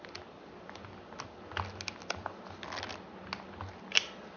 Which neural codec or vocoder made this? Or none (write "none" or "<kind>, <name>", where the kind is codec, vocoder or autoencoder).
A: none